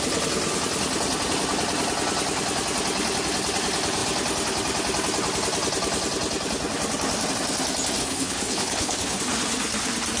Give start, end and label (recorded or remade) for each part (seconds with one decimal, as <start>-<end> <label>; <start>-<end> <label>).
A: 0.0-8.0 recorded; 8.0-9.2 remade; 9.2-10.2 recorded